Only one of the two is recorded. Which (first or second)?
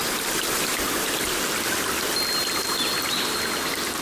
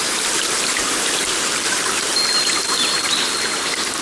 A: first